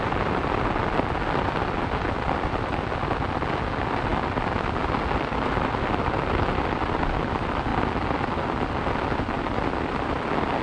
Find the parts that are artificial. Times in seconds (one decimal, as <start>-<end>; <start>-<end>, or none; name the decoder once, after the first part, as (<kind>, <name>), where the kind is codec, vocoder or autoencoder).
none